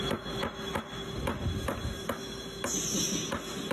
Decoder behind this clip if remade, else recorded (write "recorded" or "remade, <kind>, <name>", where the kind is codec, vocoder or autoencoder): recorded